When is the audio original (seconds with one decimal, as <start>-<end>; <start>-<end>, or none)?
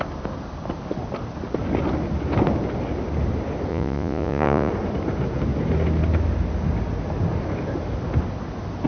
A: 0.0-3.7; 4.7-8.9